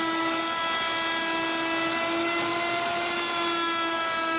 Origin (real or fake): real